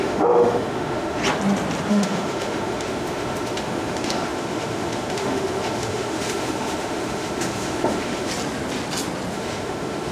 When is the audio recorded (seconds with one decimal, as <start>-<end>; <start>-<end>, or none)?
1.2-1.9; 8.3-9.3